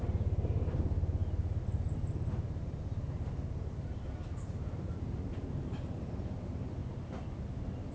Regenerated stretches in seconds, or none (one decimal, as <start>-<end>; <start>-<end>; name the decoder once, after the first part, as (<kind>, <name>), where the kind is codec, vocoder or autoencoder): none